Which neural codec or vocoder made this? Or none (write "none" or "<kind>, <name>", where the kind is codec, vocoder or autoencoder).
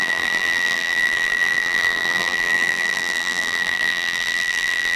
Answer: vocoder, BigVGAN v2